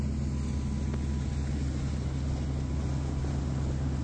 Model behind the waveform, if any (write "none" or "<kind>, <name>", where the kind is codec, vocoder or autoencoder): none